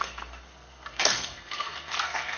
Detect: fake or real fake